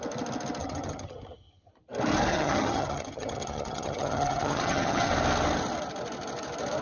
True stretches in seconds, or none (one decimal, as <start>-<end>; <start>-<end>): 0.0-0.6; 1.7-2.3; 5.1-6.8